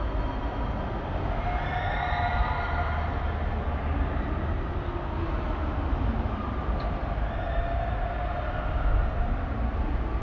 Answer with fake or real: real